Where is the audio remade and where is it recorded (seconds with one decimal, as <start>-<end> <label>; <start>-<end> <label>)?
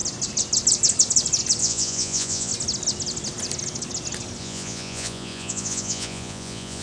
0.0-1.6 recorded; 1.6-2.5 remade; 2.5-4.4 recorded; 4.4-6.8 remade